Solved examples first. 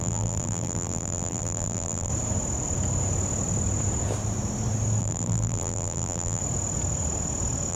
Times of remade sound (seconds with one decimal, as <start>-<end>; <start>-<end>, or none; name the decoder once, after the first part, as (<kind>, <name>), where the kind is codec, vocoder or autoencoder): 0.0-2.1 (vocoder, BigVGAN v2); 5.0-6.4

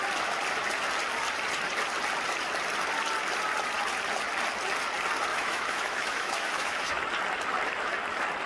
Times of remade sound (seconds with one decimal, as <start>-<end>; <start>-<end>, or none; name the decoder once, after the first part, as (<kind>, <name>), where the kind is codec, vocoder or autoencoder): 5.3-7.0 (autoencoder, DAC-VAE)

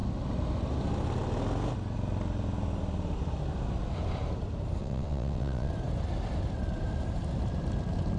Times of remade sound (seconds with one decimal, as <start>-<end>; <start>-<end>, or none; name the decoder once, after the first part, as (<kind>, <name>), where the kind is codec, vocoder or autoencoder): 4.8-5.7 (vocoder, WaveNeXt)

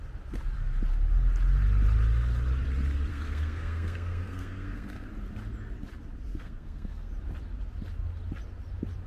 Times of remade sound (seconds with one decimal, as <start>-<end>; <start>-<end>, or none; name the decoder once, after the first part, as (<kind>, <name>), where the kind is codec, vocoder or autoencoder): 3.1-5.1 (codec, SNAC); 6.3-7.1

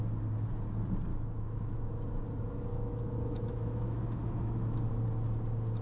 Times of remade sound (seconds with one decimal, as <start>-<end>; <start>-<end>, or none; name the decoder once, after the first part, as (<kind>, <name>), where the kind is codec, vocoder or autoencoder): 1.1-1.9 (autoencoder, DAC-VAE); 2.7-4.9